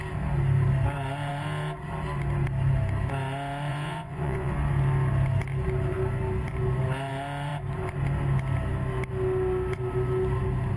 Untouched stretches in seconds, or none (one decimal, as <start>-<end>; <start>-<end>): 0.0-3.7; 4.5-10.8